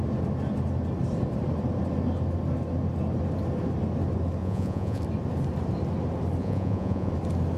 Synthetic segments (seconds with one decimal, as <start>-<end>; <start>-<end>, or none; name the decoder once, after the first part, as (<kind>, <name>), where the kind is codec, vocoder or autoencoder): 4.4-5.0 (vocoder, Vocos); 6.4-7.1